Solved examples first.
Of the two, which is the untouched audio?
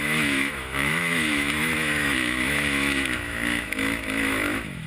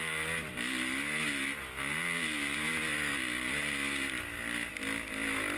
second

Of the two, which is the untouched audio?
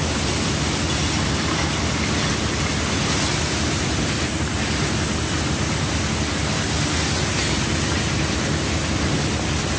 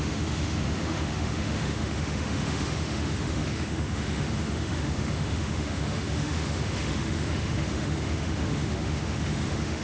first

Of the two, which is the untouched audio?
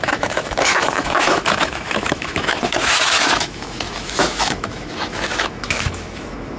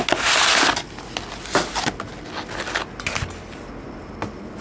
second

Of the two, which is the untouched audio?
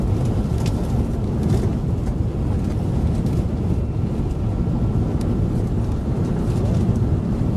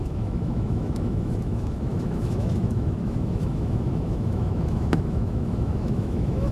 first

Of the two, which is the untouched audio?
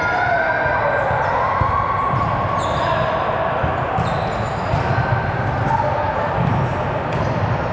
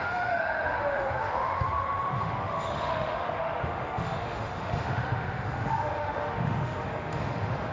first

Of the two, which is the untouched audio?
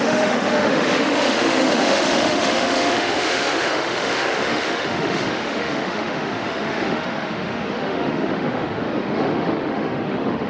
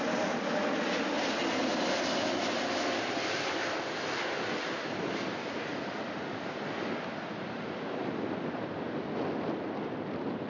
second